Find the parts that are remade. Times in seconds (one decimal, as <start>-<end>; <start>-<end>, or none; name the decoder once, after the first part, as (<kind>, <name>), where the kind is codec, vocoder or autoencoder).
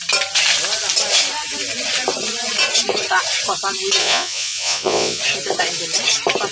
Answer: 4.0-5.2 (vocoder, Vocos)